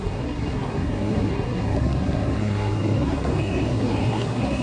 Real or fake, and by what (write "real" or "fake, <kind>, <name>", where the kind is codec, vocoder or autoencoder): fake, codec, SNAC